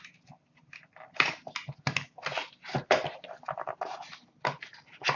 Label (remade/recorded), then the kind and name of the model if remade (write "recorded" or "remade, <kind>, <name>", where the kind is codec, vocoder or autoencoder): recorded